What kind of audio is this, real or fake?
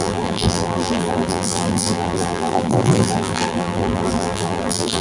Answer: fake